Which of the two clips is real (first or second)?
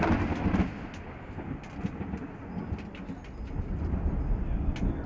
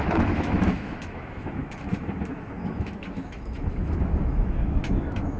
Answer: first